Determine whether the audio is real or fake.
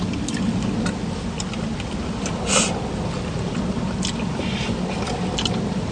real